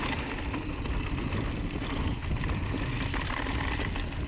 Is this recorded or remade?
recorded